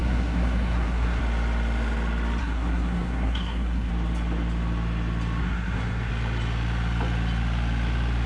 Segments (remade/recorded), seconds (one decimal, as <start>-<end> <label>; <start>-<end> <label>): 0.0-1.2 remade; 1.2-2.4 recorded; 2.4-3.9 remade; 3.9-5.4 recorded; 5.4-6.1 remade; 6.1-8.3 recorded